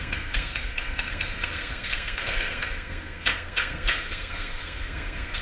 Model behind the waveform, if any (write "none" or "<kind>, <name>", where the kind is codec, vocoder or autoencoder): codec, SNAC